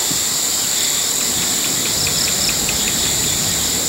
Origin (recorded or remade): recorded